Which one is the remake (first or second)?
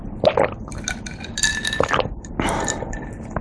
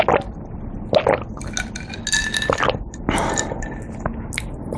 first